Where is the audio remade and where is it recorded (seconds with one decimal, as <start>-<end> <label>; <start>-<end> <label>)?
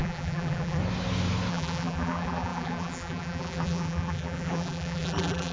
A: 0.0-0.8 remade; 0.8-1.5 recorded; 1.5-5.5 remade